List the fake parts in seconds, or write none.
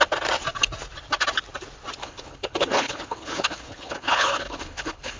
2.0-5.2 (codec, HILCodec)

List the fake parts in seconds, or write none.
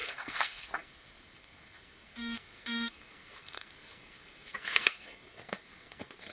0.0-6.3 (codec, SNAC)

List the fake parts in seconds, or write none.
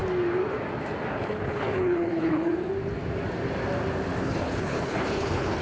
1.1-2.5 (codec, HILCodec); 4.2-5.6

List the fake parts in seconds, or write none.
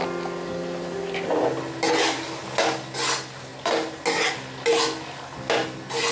none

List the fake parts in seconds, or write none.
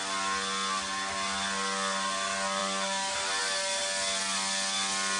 none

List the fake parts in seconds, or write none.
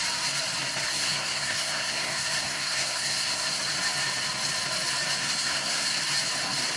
0.9-3.6 (codec, SNAC); 5.2-6.0